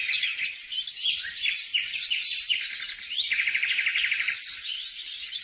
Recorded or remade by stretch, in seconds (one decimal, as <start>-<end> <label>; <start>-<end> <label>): 0.0-5.4 recorded